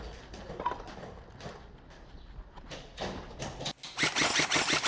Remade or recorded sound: recorded